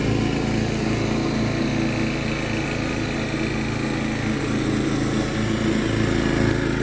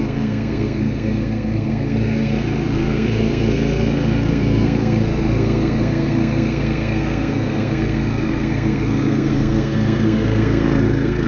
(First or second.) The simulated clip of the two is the second